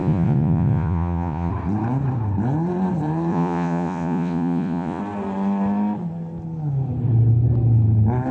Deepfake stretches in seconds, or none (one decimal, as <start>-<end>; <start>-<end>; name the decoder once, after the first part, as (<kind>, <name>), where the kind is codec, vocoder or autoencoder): 0.0-1.5 (vocoder, Vocos); 3.3-5.0